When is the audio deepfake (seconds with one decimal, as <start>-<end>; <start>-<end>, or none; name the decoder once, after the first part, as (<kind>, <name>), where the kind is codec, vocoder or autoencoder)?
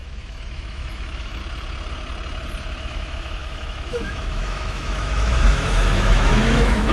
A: 0.0-1.4 (autoencoder, DAC-VAE); 2.8-6.9